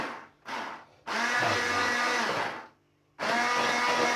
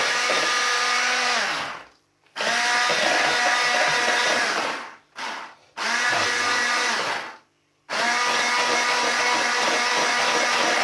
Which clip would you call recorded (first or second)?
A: first